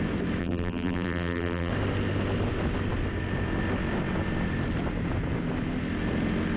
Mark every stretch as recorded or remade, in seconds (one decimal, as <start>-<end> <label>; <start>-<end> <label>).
0.0-0.4 recorded; 0.4-1.7 remade; 1.7-6.6 recorded